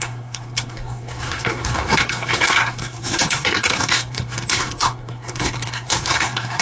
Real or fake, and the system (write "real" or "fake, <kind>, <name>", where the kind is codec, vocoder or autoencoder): fake, codec, SNAC